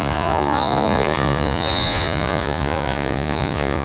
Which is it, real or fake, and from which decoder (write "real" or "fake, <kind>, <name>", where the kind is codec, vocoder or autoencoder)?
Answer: fake, vocoder, Vocos